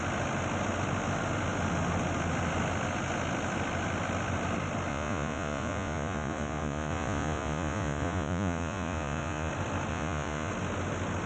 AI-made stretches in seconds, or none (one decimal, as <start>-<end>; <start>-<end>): 4.9-9.5; 9.9-10.5